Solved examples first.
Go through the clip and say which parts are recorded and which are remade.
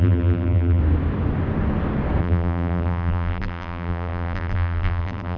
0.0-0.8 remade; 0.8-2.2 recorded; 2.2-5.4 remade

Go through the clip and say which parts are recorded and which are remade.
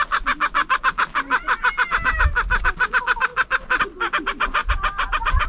0.0-4.6 recorded; 4.6-5.5 remade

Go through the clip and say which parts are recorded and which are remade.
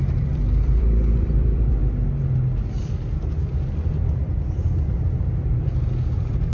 0.0-1.8 remade; 1.8-5.6 recorded; 5.6-6.5 remade